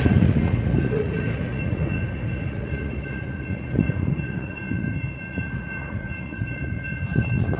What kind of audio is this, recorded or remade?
remade